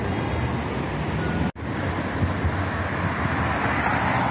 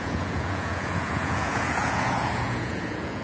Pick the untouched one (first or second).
first